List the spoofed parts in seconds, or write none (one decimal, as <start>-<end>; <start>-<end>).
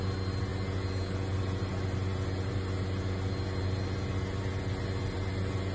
none